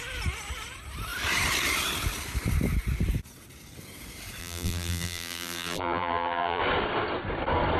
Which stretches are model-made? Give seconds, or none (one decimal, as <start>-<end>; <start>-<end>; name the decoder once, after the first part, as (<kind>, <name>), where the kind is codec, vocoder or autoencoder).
4.4-6.6 (vocoder, BigVGAN v2)